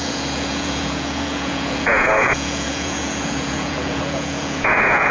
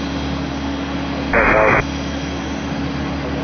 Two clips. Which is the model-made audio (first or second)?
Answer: first